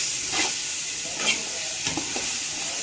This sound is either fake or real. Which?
real